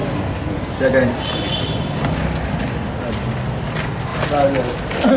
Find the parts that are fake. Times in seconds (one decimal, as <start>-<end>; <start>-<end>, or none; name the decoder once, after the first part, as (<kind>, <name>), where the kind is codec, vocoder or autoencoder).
none